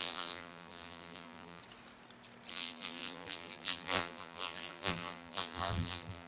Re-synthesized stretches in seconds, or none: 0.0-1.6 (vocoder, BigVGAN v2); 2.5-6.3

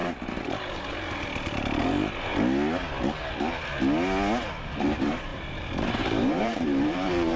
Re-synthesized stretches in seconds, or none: 0.7-2.3 (vocoder, BigVGAN v2); 4.8-7.4

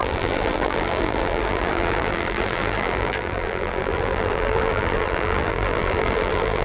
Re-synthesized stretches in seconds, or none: 0.0-6.6 (vocoder, BigVGAN v2)

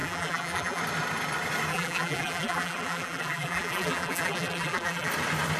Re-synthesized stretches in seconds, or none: 0.0-0.8 (vocoder, BigVGAN v2); 1.7-5.1

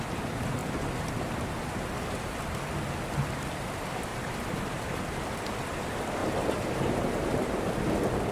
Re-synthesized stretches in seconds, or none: 0.6-2.2 (vocoder, BigVGAN v2); 4.1-5.0; 6.2-7.5

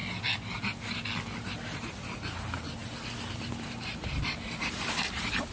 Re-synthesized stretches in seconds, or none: 1.2-5.5 (vocoder, BigVGAN v2)

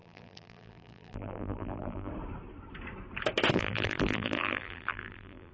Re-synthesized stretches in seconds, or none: 0.0-2.1 (vocoder, BigVGAN v2); 3.5-5.5

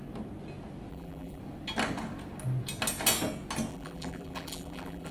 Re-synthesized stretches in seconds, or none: 0.9-1.4 (vocoder, BigVGAN v2); 3.7-5.1